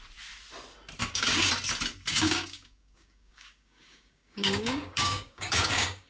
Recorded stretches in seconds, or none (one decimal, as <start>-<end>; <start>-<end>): 0.0-1.0; 1.5-2.1